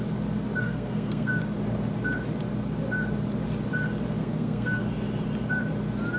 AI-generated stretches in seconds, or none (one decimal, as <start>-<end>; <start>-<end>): 0.6-1.4; 4.2-4.8